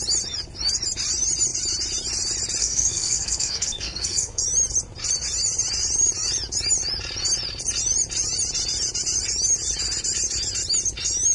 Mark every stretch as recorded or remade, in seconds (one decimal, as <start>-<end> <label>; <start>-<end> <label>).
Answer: 0.0-2.6 recorded; 2.6-4.4 remade; 4.4-11.3 recorded